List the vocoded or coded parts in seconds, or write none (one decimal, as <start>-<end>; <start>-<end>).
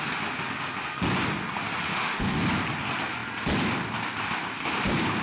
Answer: 1.9-2.4